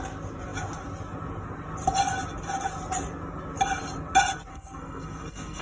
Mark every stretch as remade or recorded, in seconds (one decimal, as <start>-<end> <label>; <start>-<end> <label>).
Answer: 0.0-4.5 recorded; 4.5-5.6 remade